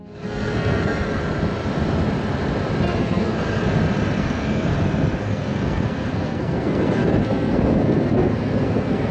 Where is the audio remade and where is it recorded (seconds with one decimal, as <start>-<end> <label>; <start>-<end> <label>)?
0.0-1.2 remade; 1.2-3.0 recorded; 3.0-3.6 remade; 3.6-4.2 recorded; 4.2-4.7 remade; 4.7-5.2 recorded; 5.2-9.1 remade